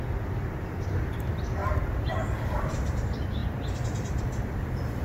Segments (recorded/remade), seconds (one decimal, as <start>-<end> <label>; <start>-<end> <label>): 0.0-1.6 remade; 1.6-2.4 recorded; 2.4-5.0 remade